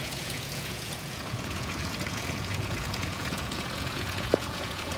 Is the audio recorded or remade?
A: remade